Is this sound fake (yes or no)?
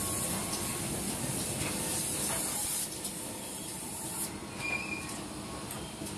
no